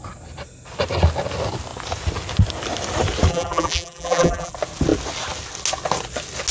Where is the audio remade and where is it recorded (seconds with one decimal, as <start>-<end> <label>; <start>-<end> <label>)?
0.0-3.3 recorded; 3.3-4.5 remade; 4.5-6.5 recorded